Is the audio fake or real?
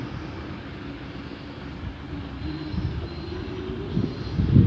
real